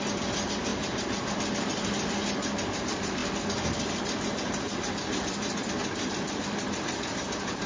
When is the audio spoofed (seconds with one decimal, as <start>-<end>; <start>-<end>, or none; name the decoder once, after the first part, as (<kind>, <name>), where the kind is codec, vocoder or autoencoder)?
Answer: none